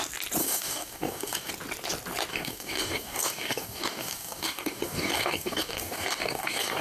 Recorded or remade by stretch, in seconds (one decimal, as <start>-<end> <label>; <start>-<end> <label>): 0.0-0.4 recorded; 0.4-1.5 remade; 1.5-2.3 recorded; 2.3-6.8 remade